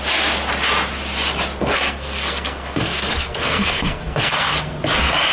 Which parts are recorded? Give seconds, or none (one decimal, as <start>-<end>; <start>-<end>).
0.0-1.6; 4.8-5.3